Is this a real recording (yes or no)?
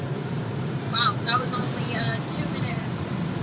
no